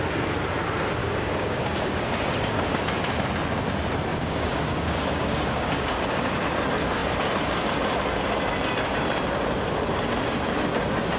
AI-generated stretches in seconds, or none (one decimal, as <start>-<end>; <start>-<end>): 1.0-2.8; 4.1-6.0